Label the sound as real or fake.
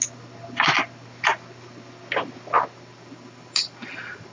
real